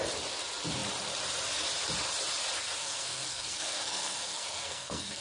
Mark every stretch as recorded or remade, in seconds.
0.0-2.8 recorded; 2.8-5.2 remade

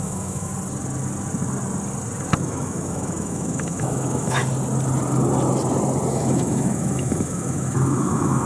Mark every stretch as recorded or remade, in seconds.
0.0-0.5 remade; 0.5-2.4 recorded; 2.4-4.4 remade; 4.4-6.1 recorded; 6.1-8.5 remade

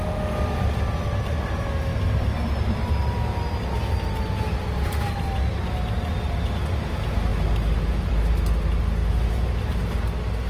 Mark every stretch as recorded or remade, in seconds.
0.0-9.0 recorded; 9.0-9.5 remade; 9.5-10.5 recorded

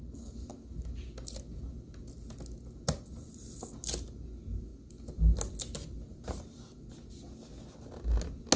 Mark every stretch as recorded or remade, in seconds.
0.0-8.6 recorded

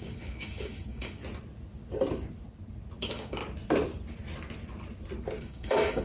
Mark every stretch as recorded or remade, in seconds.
0.0-1.2 remade; 1.2-3.0 recorded; 3.0-3.4 remade; 3.4-5.4 recorded; 5.4-6.0 remade

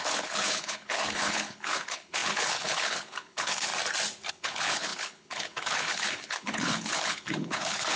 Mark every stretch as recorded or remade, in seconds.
0.0-3.7 remade; 3.7-4.3 recorded; 4.3-8.0 remade

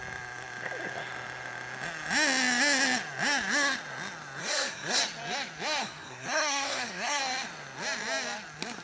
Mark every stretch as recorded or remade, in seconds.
0.0-4.4 recorded; 4.4-5.0 remade; 5.0-5.8 recorded; 5.8-7.2 remade; 7.2-8.8 recorded